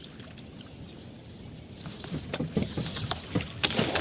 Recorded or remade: recorded